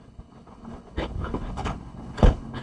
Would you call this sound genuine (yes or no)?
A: no